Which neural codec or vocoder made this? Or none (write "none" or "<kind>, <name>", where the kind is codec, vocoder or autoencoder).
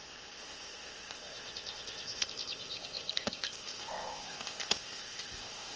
codec, ZipCodec